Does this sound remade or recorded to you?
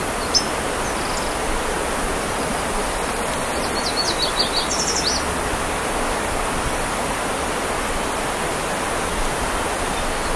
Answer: recorded